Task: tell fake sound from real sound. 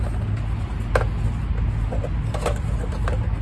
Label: real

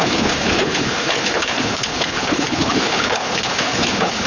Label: fake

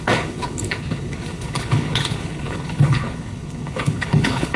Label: fake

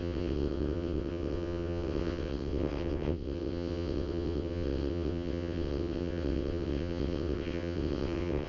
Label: fake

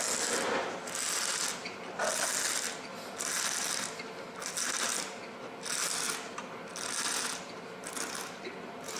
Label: real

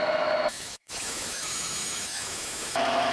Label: fake